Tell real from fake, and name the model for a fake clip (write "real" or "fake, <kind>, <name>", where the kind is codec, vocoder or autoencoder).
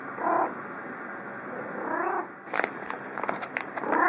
real